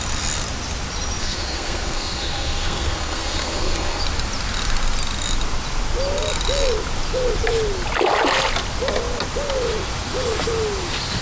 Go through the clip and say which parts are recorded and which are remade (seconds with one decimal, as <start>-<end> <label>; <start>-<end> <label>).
0.0-1.2 recorded; 1.2-4.0 remade; 4.0-11.2 recorded